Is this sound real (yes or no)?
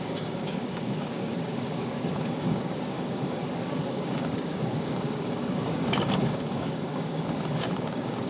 no